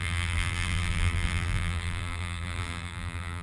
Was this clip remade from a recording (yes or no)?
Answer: yes